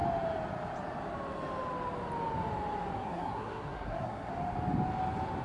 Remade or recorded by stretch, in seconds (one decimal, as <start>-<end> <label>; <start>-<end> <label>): 0.0-3.0 recorded; 3.0-4.3 remade; 4.3-5.4 recorded